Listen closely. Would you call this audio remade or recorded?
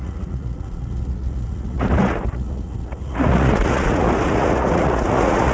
remade